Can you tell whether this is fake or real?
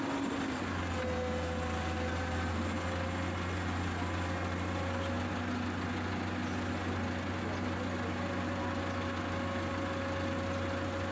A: real